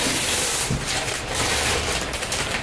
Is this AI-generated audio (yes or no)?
no